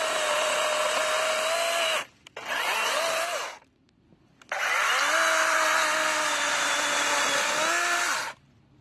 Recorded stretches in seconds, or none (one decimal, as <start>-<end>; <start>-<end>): 0.0-8.8